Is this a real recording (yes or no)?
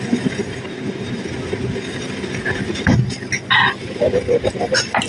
yes